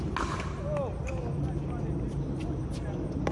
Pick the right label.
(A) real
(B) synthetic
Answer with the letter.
A